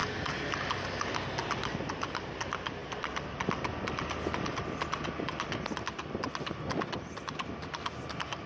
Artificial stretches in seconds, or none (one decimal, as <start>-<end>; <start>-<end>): none